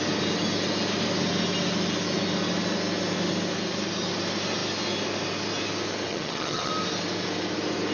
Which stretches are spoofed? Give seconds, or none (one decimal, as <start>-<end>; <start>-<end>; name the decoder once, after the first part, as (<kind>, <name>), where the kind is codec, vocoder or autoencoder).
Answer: 6.1-6.7 (vocoder, HiFi-GAN)